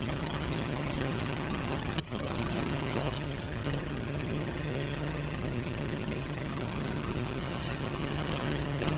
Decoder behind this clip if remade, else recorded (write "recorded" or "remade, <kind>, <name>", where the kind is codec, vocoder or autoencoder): remade, vocoder, HiFi-GAN